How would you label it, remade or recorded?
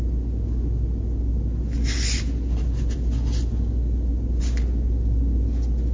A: recorded